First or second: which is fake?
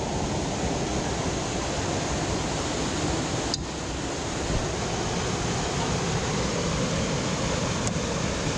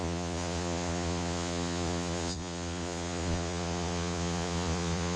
second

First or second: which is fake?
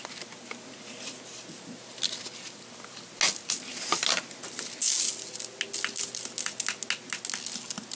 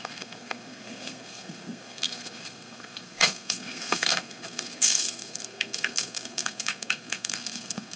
second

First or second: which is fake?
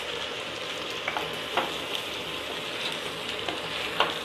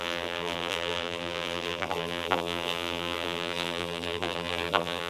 second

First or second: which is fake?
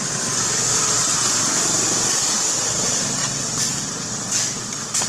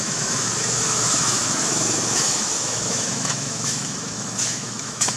second